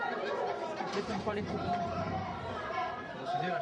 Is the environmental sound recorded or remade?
remade